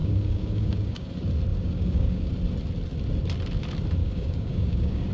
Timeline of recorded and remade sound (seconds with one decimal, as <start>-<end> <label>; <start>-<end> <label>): 0.0-1.1 remade; 1.1-1.5 recorded; 1.5-2.3 remade; 2.3-4.0 recorded; 4.0-5.1 remade